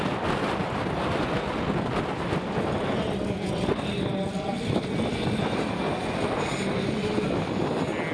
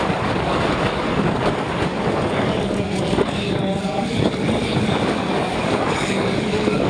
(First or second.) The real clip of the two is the first